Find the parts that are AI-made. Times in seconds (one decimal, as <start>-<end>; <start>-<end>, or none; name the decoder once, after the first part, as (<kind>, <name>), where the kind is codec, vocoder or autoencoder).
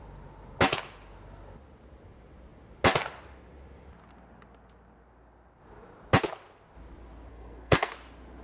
7.3-7.9 (codec, SNAC)